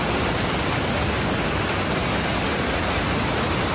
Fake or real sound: real